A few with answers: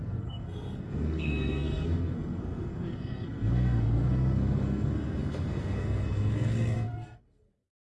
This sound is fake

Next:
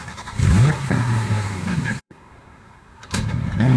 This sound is fake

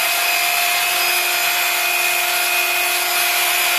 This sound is real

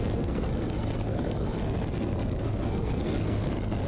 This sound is fake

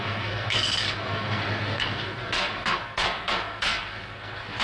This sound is fake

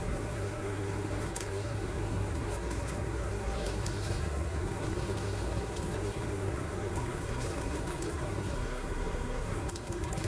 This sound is fake